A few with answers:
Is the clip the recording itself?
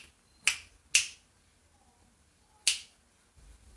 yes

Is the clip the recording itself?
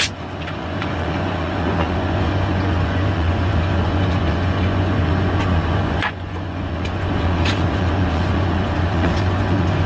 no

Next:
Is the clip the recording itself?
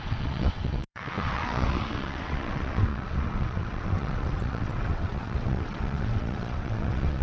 no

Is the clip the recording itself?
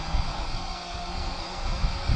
no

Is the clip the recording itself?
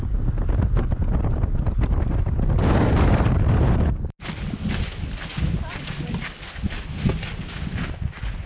yes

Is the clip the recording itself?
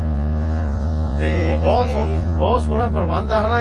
no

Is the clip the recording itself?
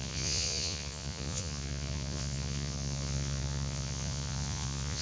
no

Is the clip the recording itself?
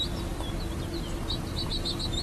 yes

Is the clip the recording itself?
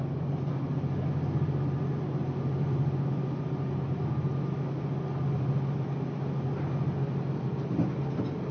yes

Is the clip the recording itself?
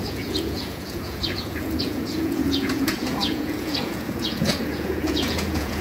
no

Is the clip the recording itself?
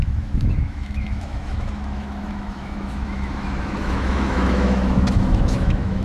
no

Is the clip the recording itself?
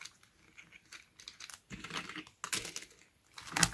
yes